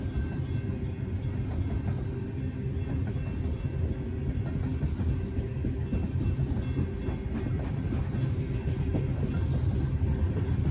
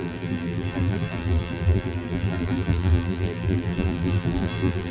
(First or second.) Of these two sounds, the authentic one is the first